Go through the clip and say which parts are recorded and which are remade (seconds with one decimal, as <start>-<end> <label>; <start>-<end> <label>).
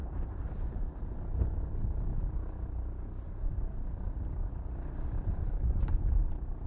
0.0-1.7 recorded; 1.7-2.1 remade; 2.1-5.5 recorded; 5.5-6.7 remade